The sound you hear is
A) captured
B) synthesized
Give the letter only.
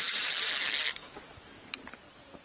A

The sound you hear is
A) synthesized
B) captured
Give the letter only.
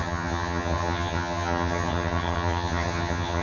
A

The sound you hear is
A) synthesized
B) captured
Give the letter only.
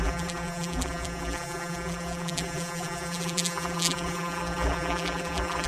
A